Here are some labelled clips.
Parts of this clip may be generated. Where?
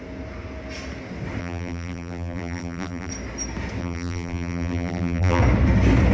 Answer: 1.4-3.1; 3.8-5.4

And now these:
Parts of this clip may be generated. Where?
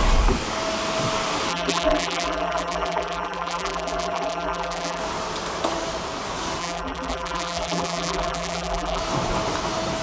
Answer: 1.5-5.0; 6.6-9.0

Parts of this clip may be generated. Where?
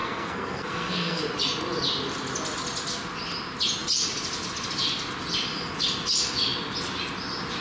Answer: 0.0-1.2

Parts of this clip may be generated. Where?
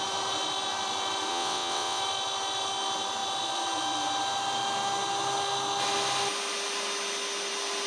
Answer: 1.3-2.0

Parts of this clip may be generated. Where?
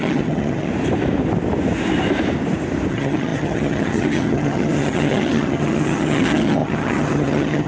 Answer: 0.0-0.7; 2.9-7.7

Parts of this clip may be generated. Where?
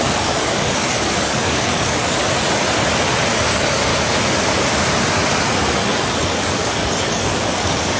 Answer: 0.0-2.2; 3.3-3.9; 6.2-8.0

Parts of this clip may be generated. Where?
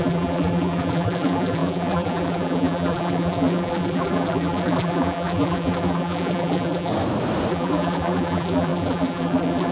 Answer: 0.0-6.9; 7.5-9.7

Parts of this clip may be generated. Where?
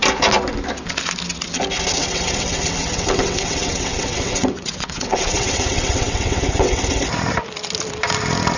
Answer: 2.0-6.8